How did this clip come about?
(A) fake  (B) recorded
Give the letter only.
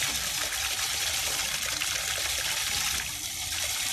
B